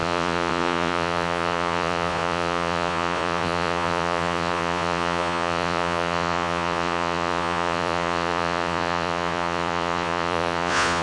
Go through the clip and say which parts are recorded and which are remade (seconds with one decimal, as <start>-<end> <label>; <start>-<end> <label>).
0.0-11.0 remade